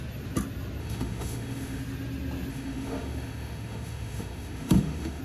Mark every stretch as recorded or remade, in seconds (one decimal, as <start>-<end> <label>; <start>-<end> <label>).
0.0-0.8 recorded; 0.8-1.8 remade; 1.8-2.5 recorded; 2.5-5.2 remade